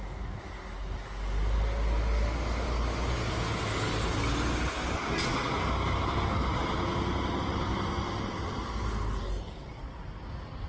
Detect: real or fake real